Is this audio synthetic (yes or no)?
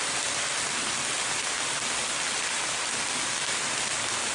no